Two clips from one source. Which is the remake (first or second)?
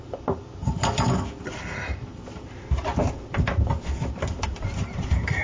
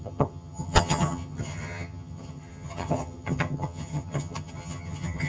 second